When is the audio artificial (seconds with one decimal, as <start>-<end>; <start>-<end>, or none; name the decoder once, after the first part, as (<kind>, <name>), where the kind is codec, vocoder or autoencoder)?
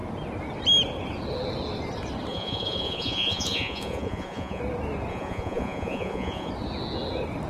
2.3-4.6 (vocoder, Vocos); 5.1-6.5